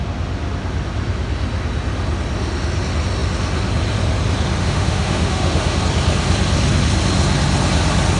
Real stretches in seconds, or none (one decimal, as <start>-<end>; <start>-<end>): 0.0-4.6; 5.8-8.2